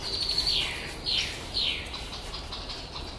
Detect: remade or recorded recorded